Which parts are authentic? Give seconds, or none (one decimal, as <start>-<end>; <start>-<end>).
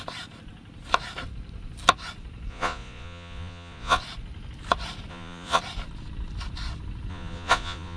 0.0-2.5; 4.0-5.1; 5.6-7.1